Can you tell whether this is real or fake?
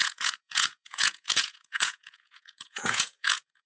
fake